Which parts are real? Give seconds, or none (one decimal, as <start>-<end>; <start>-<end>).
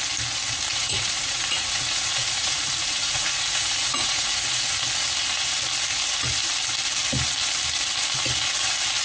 0.0-0.7; 4.8-9.0